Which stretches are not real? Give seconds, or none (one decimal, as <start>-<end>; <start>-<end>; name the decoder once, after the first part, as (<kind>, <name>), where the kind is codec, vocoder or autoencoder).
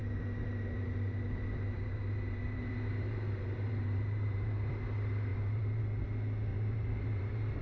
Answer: 0.0-4.5 (vocoder, BigVGAN v2); 5.3-5.8; 6.5-7.6